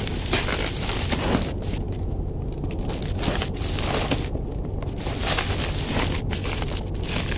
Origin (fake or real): real